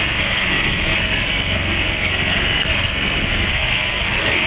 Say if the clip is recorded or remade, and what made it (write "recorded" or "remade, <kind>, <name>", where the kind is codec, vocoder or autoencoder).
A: remade, codec, SNAC